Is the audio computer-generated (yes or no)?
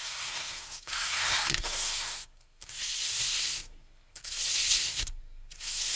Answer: yes